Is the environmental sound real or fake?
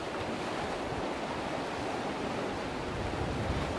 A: real